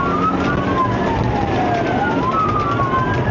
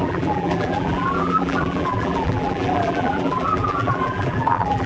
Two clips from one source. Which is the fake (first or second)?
second